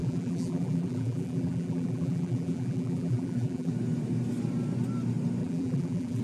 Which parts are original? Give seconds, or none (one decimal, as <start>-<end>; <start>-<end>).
3.7-5.4